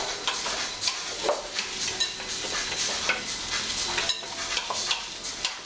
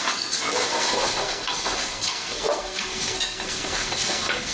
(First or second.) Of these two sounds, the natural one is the first